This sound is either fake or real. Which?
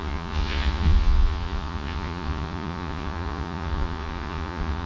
fake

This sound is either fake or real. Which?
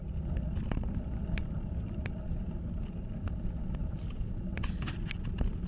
real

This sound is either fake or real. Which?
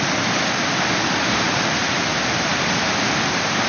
real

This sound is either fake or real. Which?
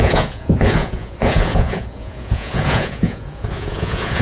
fake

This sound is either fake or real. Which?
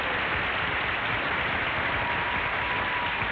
real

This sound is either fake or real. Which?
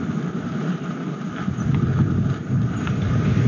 real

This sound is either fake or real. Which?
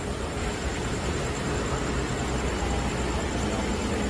real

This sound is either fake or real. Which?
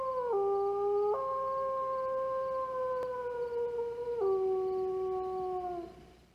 real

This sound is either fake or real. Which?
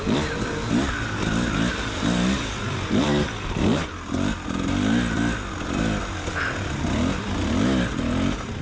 real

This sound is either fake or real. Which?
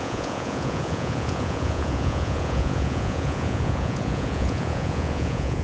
fake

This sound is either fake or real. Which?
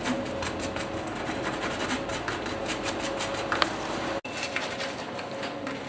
real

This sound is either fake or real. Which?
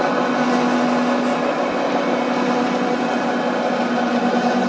real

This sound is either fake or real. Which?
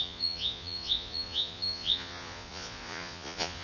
fake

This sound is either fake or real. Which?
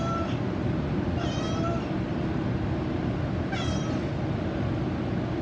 real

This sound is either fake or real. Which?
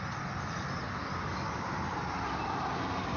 real